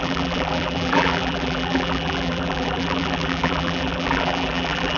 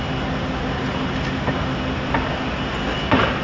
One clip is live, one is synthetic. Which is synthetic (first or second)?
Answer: first